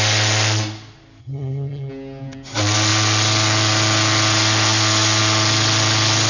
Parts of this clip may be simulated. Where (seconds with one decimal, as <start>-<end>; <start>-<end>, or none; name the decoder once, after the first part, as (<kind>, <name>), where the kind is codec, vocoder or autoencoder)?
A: 1.2-1.9 (vocoder, HiFi-GAN)